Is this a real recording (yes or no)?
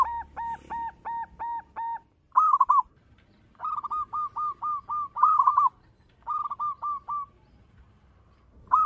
yes